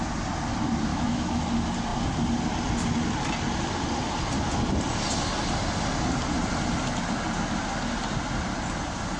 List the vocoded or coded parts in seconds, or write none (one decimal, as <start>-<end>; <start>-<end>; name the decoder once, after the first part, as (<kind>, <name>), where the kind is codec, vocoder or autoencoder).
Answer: 0.9-1.5 (autoencoder, DAC-VAE)

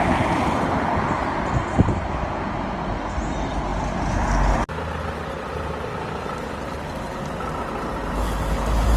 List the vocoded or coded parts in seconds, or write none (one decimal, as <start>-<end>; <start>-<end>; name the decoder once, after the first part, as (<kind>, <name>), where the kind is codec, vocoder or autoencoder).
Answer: none

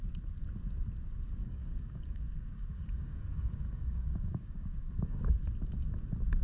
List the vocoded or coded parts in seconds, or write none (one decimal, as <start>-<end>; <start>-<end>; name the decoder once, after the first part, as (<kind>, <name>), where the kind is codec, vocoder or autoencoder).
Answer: 1.4-5.2 (codec, DAC)

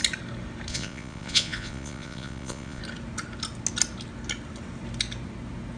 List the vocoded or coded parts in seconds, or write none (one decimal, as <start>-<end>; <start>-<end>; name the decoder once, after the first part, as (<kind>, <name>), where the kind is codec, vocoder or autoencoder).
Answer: 0.7-2.8 (vocoder, Vocos)

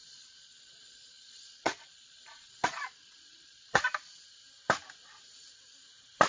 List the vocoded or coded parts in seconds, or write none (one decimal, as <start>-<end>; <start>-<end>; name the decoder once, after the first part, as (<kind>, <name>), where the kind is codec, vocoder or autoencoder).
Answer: 0.0-3.8 (vocoder, Vocos)

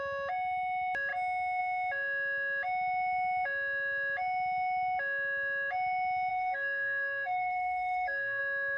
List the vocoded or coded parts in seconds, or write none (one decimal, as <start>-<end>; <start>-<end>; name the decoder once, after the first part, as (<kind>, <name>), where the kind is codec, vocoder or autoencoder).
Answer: 6.3-8.4 (codec, SNAC)